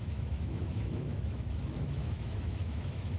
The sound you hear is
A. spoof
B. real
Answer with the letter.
A